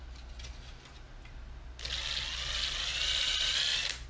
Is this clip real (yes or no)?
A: yes